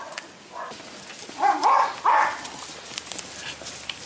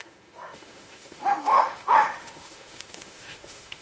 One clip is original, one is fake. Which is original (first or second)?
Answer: first